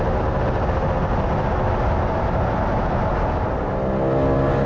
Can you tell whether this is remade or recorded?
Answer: recorded